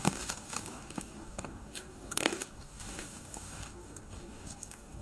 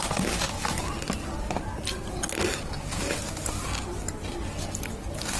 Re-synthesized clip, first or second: first